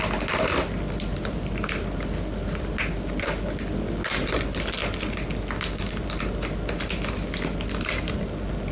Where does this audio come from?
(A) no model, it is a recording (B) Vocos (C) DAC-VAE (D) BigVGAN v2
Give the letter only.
A